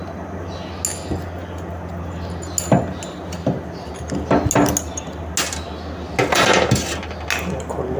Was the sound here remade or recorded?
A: recorded